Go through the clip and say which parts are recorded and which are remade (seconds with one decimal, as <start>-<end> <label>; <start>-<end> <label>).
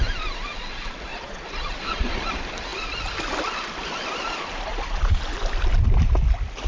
0.0-1.1 recorded; 1.1-2.1 remade; 2.1-4.7 recorded; 4.7-5.2 remade; 5.2-6.7 recorded